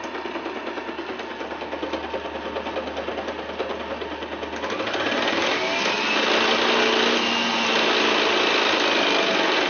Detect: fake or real real